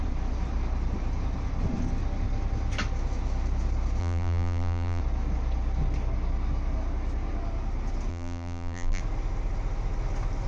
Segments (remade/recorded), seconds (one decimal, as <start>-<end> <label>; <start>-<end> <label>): 0.0-4.0 recorded; 4.0-5.0 remade; 5.0-8.1 recorded; 8.1-9.0 remade; 9.0-10.5 recorded